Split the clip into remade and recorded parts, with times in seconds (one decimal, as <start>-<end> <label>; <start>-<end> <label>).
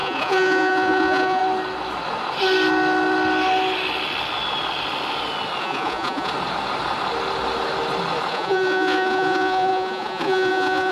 0.0-1.4 remade; 1.4-5.6 recorded; 5.6-6.3 remade; 6.3-8.3 recorded; 8.3-10.9 remade